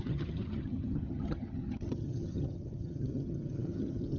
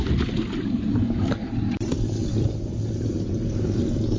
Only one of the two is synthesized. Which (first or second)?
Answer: first